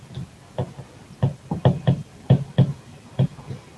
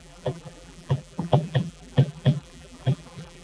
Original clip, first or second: first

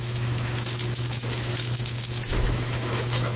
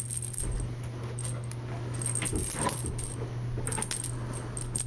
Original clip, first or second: second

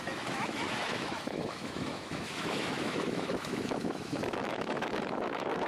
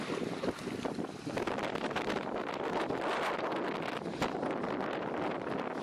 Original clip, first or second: second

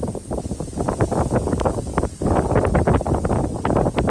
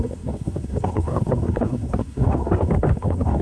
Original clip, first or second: first